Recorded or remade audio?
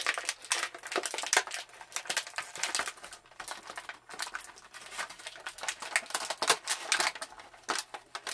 recorded